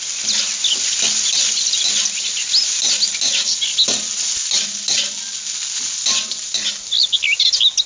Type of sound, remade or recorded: recorded